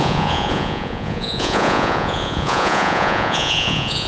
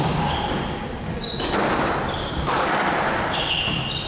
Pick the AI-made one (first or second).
first